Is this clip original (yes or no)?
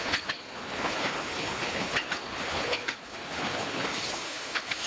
no